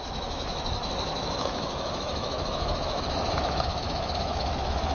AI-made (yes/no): yes